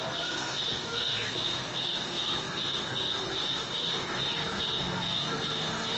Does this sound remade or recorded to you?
remade